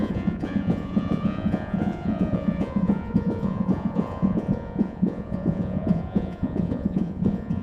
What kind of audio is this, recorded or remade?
remade